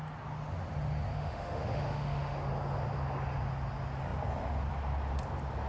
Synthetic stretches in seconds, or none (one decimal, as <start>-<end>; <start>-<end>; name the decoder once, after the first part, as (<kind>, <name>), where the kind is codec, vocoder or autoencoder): 1.1-2.5 (autoencoder, DAC-VAE)